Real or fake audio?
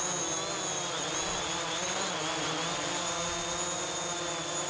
real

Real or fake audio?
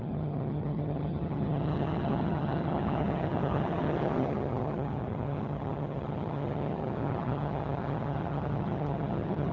fake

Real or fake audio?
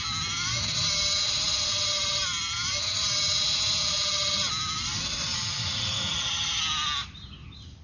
real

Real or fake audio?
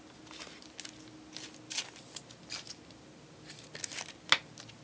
real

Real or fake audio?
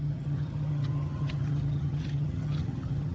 fake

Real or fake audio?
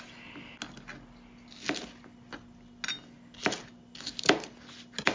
real